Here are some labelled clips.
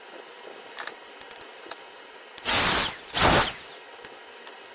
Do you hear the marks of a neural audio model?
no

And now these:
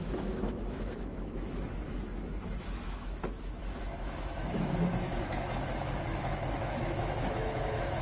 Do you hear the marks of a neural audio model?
yes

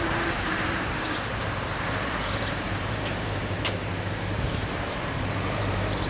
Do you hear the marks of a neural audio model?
yes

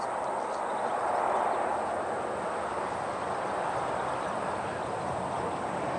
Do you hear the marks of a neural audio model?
yes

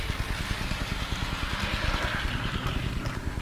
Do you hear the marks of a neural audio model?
no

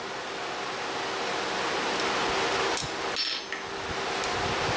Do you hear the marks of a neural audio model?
no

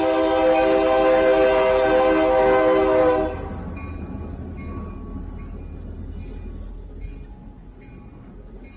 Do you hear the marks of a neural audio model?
no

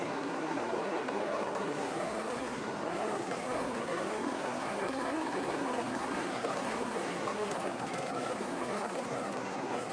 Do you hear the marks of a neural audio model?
yes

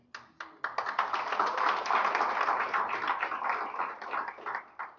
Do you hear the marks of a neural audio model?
no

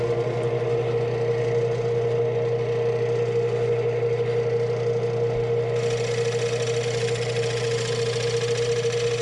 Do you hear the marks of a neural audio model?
no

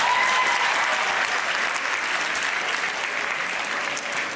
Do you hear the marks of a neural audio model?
no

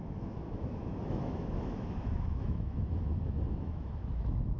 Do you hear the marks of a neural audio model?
yes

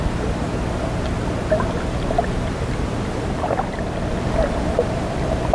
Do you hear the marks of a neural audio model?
no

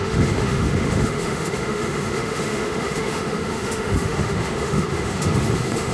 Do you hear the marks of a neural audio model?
yes